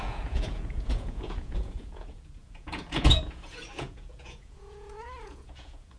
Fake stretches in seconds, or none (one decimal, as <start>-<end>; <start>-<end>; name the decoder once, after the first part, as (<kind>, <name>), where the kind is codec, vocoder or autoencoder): 0.0-6.0 (vocoder, Vocos)